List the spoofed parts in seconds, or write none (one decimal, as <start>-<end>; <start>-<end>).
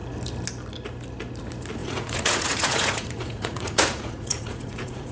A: 1.8-5.1